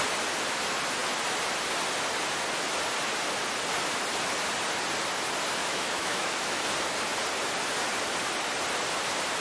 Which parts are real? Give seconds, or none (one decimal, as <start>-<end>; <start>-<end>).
0.0-5.6; 6.6-9.4